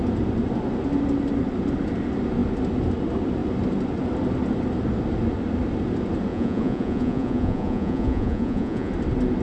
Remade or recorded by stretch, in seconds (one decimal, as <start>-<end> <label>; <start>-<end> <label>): 0.0-6.3 recorded; 6.3-8.9 remade; 8.9-9.4 recorded